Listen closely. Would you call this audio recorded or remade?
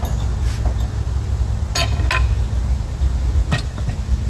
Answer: recorded